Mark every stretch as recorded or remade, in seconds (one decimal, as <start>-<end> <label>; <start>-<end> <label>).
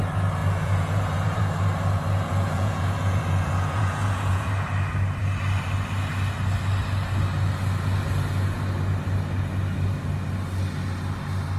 0.0-0.4 recorded; 0.4-1.4 remade; 1.4-2.3 recorded; 2.3-4.5 remade; 4.5-11.6 recorded